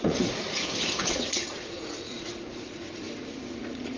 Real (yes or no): no